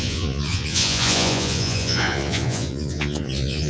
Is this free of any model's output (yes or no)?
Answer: no